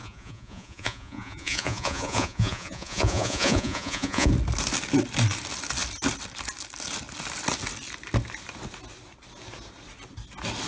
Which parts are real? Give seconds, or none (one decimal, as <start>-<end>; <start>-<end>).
4.3-10.7